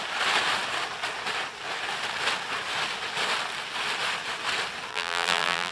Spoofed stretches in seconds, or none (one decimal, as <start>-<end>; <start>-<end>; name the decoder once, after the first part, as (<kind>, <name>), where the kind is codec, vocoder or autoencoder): 4.9-5.7 (vocoder, BigVGAN v2)